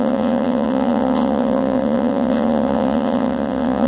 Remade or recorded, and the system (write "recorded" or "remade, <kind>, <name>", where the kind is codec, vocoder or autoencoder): remade, vocoder, Vocos